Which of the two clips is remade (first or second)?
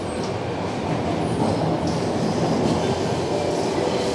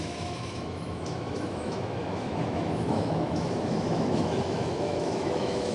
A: second